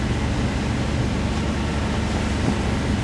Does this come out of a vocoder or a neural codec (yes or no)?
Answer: no